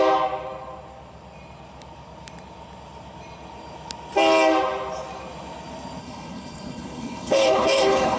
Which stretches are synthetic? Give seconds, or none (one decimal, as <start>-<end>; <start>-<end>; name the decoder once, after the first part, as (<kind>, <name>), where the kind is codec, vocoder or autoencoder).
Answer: 6.0-8.2 (codec, HILCodec)